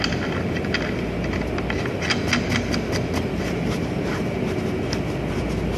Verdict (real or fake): real